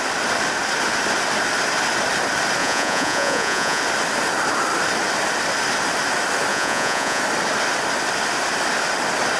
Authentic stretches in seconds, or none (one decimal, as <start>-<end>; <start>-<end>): 0.0-2.6; 3.8-6.5; 7.2-9.4